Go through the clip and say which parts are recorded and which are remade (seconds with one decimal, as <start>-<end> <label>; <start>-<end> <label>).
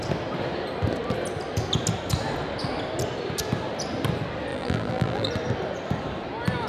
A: 0.0-4.5 recorded; 4.5-5.3 remade; 5.3-6.7 recorded